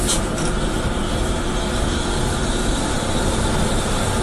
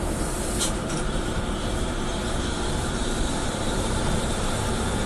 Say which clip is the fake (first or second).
second